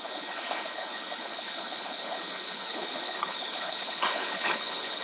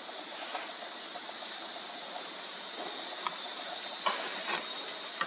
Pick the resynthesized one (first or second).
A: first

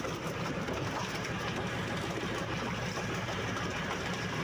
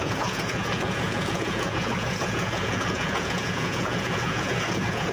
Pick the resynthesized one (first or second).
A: second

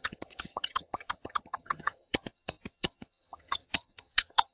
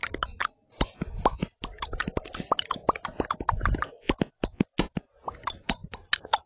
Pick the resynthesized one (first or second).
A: first